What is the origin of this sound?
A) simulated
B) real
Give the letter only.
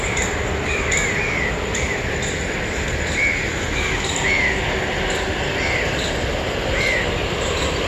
B